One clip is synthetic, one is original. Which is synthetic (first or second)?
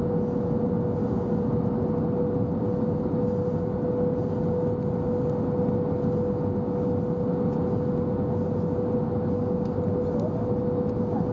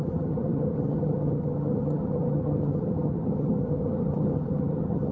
second